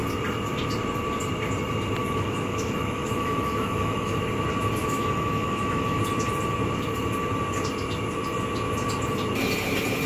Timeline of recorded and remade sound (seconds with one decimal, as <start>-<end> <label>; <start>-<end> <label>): 0.0-2.0 recorded; 2.0-4.2 remade; 4.2-4.8 recorded; 4.8-6.0 remade; 6.0-10.1 recorded